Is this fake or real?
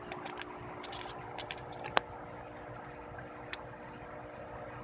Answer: real